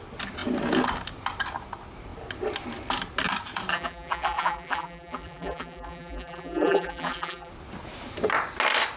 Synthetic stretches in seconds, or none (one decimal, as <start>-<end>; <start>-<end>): 3.7-7.5